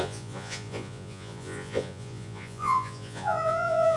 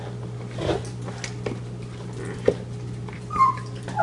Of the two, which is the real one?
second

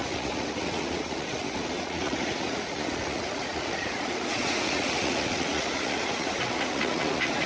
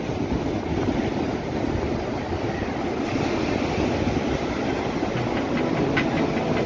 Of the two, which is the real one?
second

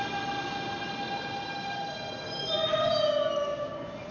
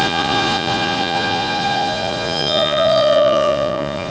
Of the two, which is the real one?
first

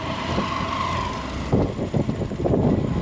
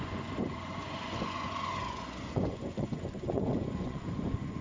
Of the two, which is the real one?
first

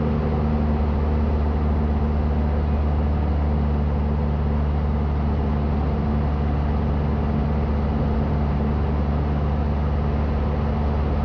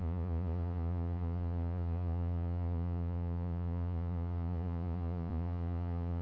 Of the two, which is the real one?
first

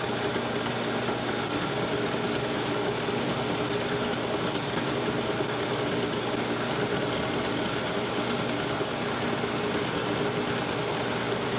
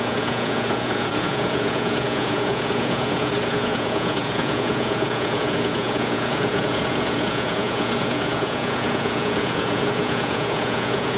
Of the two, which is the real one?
first